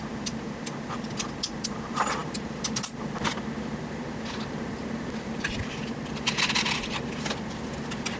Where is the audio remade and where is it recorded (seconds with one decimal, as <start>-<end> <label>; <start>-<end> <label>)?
0.0-8.2 recorded